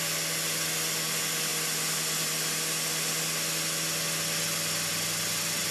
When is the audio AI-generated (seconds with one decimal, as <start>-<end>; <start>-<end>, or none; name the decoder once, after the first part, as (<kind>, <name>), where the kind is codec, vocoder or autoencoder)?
none